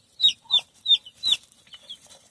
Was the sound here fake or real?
fake